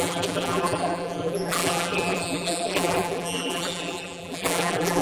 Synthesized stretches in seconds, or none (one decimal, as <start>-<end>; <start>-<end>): 0.0-5.0